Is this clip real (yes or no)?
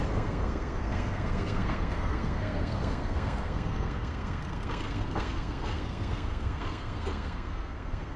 no